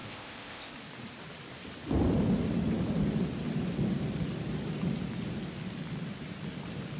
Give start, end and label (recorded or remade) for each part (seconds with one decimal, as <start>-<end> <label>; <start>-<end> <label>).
0.0-0.7 remade; 0.7-7.0 recorded